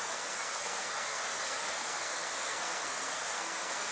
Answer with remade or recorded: remade